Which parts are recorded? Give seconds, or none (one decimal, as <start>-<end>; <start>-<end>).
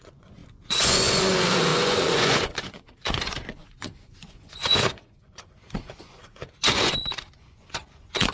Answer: none